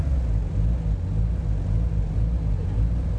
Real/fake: real